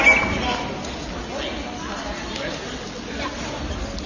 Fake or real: real